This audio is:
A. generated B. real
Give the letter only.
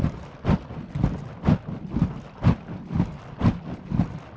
B